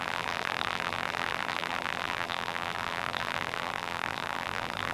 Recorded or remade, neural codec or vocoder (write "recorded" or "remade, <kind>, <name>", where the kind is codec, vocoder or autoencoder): remade, vocoder, BigVGAN v2